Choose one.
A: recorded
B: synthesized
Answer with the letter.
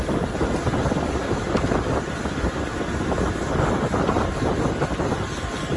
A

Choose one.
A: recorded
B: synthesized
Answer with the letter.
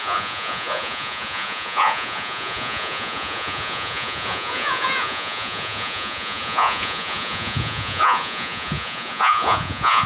B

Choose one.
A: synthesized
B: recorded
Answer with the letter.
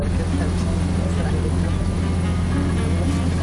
B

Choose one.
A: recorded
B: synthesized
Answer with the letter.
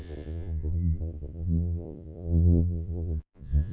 B